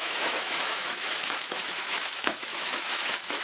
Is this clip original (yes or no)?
no